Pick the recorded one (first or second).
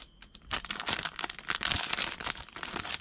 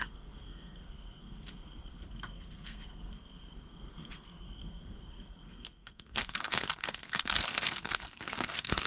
first